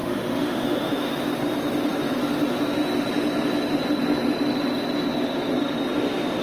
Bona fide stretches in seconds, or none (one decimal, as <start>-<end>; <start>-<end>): 1.1-6.4